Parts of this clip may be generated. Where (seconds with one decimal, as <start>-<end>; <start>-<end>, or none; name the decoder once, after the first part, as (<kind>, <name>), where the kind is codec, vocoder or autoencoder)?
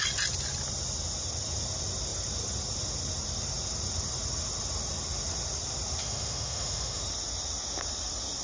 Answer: 6.0-7.0 (autoencoder, DAC-VAE)